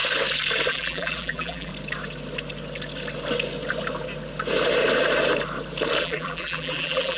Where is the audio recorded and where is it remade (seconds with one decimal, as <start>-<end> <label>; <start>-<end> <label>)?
0.0-0.7 recorded; 0.7-1.7 remade; 1.7-6.0 recorded; 6.0-7.2 remade